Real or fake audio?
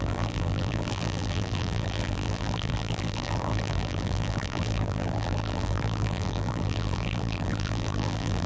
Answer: fake